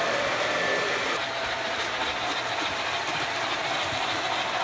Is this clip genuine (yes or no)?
no